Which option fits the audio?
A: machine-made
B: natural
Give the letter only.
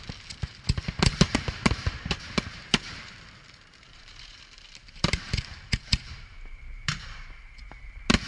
A